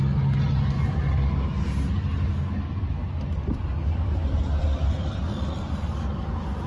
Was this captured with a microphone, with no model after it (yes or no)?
yes